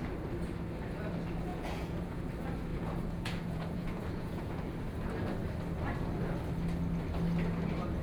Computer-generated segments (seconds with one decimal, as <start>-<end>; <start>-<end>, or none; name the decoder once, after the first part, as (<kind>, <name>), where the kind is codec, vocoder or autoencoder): 1.5-2.3 (vocoder, Vocos); 2.7-4.7